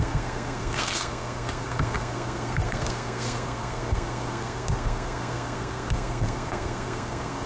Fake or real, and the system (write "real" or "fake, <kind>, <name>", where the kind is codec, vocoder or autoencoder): fake, codec, SNAC